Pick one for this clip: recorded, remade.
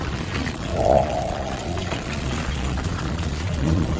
remade